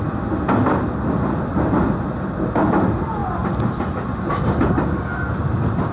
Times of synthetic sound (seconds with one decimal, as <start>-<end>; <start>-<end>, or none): none